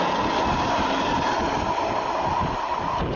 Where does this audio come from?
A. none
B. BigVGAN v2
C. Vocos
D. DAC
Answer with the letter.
A